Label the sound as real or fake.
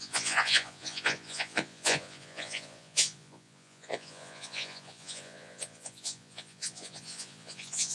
fake